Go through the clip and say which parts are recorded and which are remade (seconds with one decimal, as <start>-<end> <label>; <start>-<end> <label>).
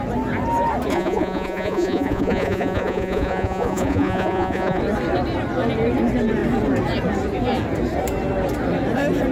0.0-0.9 recorded; 0.9-4.8 remade; 4.8-9.3 recorded